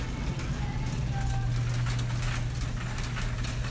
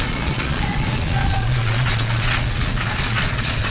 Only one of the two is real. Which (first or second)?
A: first